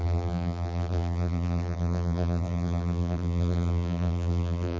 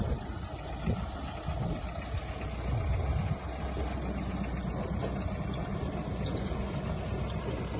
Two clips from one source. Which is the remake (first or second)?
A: first